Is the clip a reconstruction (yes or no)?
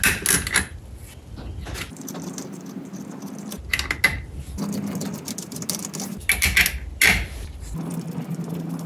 no